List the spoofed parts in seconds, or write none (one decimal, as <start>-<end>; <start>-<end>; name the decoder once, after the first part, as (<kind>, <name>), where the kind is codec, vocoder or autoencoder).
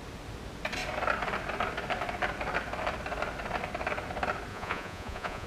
4.5-5.5 (vocoder, Vocos)